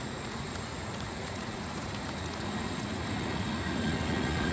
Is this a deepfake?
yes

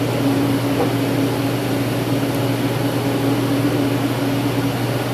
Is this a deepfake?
no